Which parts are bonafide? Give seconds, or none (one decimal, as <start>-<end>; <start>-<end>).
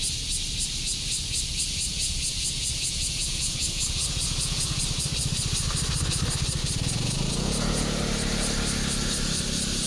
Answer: 0.0-1.9; 4.8-6.6; 8.0-9.9